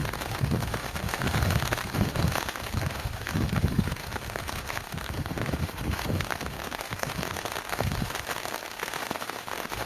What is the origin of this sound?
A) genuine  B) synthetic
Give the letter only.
B